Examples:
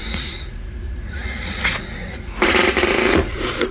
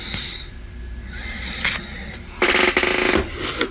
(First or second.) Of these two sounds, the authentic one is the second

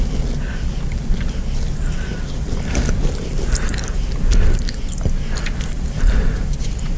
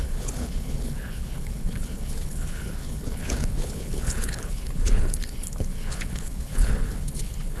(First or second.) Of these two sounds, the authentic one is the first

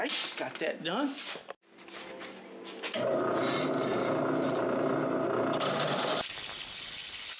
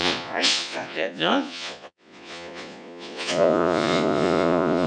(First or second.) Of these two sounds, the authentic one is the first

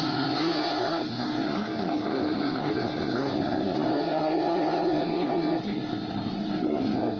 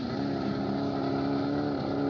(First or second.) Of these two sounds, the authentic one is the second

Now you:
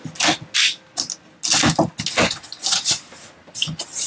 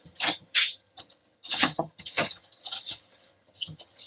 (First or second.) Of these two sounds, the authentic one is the first